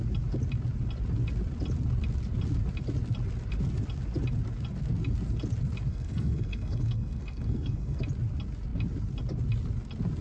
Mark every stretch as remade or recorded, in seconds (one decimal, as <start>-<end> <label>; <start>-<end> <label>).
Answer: 0.0-5.9 recorded; 5.9-8.0 remade; 8.0-10.2 recorded